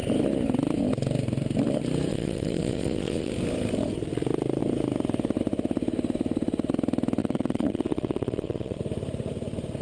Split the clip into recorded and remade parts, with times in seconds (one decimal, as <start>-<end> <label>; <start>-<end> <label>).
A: 0.0-2.1 recorded; 2.1-3.3 remade; 3.3-7.2 recorded; 7.2-8.8 remade; 8.8-9.8 recorded